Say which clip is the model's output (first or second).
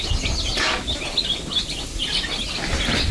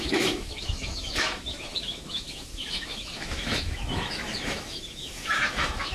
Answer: second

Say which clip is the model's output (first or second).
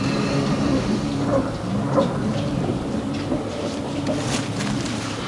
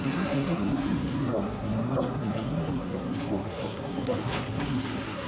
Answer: second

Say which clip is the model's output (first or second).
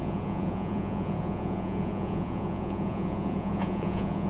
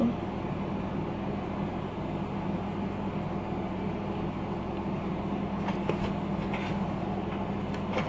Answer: first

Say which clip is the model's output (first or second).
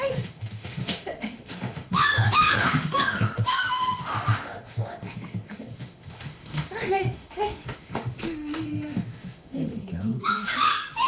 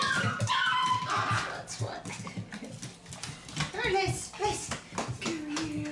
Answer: first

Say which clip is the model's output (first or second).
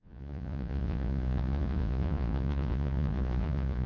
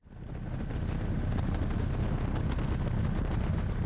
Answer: first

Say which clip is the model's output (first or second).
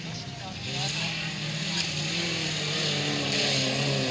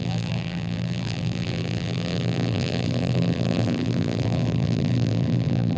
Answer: second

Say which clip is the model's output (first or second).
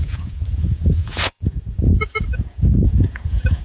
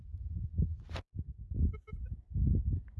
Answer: first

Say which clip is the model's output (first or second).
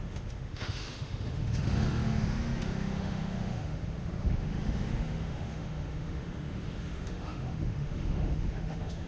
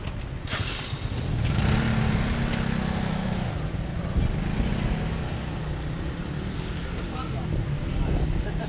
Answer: first